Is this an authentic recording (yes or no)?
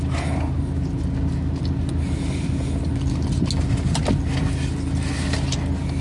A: yes